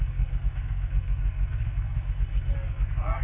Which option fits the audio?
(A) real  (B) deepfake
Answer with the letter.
B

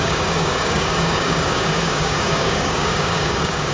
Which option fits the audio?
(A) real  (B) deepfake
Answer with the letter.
B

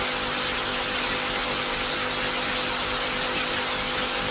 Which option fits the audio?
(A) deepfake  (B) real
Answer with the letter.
B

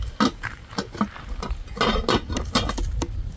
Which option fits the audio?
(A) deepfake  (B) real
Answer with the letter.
B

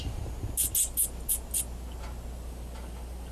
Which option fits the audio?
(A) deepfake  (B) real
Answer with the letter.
B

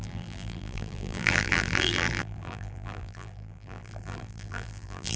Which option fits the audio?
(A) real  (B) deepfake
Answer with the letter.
B